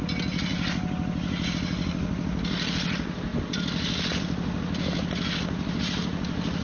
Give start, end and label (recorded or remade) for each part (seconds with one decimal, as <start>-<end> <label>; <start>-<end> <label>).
0.0-6.6 recorded